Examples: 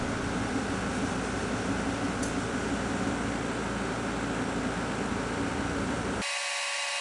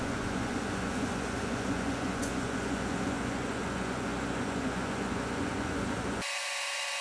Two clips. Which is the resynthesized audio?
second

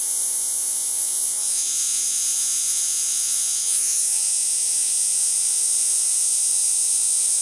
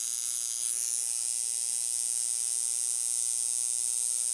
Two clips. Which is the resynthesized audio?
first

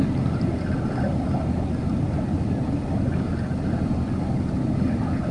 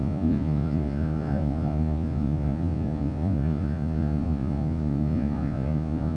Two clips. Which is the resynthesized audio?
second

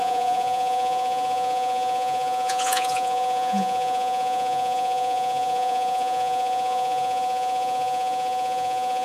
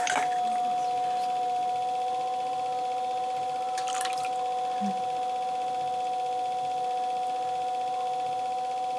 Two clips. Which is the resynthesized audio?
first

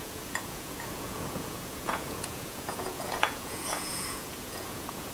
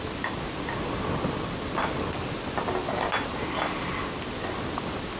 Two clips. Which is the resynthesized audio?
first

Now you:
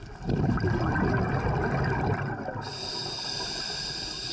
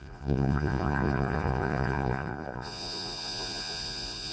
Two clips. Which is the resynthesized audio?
second